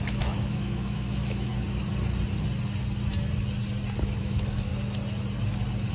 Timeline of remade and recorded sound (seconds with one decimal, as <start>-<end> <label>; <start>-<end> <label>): 0.0-1.5 remade; 1.5-4.2 recorded; 4.2-4.7 remade; 4.7-5.9 recorded